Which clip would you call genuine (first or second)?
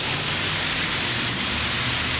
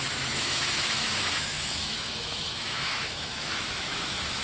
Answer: first